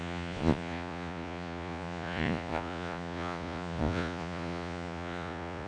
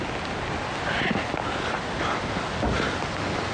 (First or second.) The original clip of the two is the second